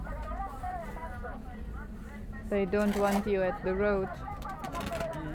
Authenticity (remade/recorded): recorded